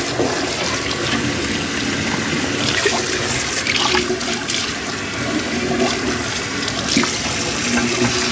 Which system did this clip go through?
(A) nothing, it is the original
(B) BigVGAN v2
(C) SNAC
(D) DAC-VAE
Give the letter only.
A